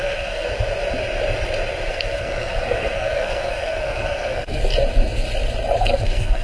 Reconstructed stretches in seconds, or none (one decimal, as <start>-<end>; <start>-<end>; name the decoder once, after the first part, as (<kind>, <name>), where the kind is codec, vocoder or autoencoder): 0.0-0.5 (codec, SNAC); 1.9-4.6; 5.8-6.4

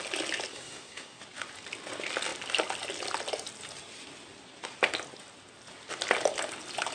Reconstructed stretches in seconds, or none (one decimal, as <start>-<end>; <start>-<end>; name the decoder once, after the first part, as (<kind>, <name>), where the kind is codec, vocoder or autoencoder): 0.5-1.2 (codec, SNAC)

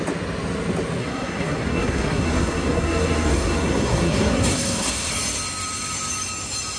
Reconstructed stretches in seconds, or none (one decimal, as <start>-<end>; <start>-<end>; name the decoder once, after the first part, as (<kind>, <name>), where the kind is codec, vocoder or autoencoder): 1.0-5.1 (codec, SNAC)

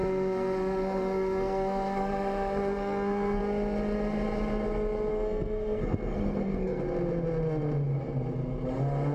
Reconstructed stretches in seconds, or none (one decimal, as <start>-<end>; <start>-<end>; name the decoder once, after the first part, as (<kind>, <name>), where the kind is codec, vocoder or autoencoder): 0.0-3.4 (codec, SNAC); 5.1-6.8

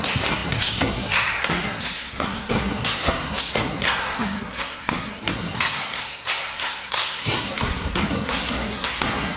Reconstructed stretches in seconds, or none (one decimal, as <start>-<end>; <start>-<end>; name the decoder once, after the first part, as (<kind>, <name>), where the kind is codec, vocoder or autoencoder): 0.0-9.4 (codec, SNAC)